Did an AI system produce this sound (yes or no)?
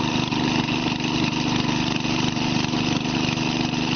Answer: no